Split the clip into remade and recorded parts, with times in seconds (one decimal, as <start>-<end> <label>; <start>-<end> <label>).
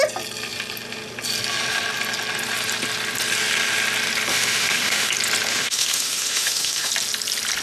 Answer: 0.0-4.3 recorded; 4.3-5.1 remade; 5.1-5.5 recorded; 5.5-6.9 remade; 6.9-7.6 recorded